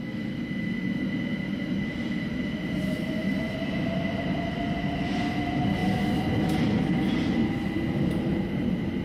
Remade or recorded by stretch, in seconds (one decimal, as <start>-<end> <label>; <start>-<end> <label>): 0.0-9.0 recorded